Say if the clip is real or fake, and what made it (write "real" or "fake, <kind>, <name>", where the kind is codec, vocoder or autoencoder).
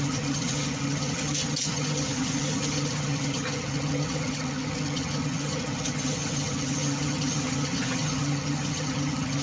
fake, vocoder, HiFi-GAN